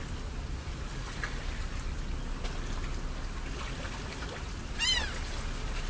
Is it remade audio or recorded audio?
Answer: recorded